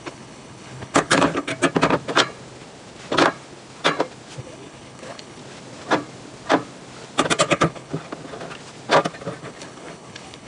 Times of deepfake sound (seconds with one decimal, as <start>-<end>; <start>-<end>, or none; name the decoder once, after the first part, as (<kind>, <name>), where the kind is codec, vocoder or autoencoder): 0.0-1.5 (codec, HILCodec); 4.4-5.4; 7.5-7.9; 9.4-10.5